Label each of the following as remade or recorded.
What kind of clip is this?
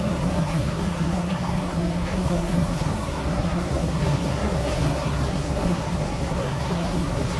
remade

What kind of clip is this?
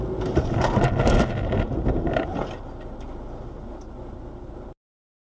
recorded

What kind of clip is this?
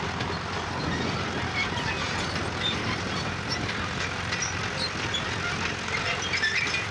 recorded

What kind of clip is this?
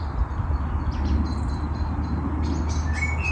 recorded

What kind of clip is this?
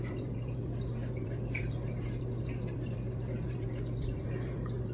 remade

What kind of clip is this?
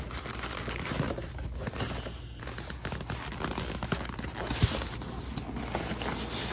recorded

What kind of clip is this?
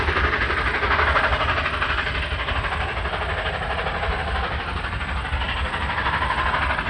recorded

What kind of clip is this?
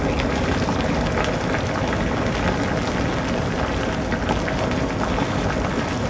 recorded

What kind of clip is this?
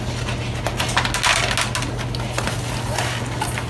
recorded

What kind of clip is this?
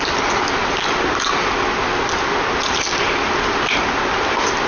recorded